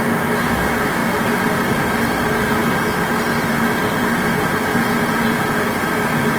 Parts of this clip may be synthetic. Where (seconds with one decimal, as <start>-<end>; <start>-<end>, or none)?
4.7-5.9